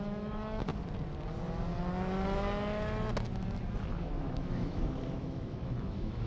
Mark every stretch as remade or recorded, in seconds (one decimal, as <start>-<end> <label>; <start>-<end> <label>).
0.0-0.7 remade; 0.7-4.0 recorded; 4.0-6.3 remade